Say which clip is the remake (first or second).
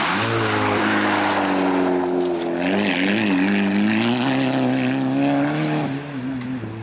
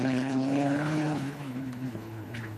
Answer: second